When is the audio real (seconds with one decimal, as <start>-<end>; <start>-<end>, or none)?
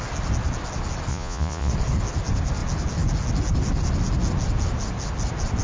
0.0-1.1; 1.7-5.6